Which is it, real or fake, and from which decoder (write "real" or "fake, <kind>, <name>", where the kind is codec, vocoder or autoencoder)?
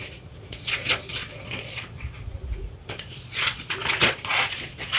fake, vocoder, Vocos